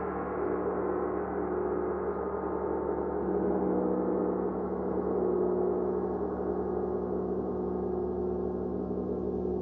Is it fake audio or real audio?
real